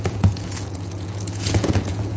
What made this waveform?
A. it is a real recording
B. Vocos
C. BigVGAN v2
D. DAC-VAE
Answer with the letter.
B